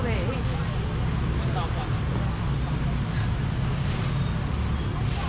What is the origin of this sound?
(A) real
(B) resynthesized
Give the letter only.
A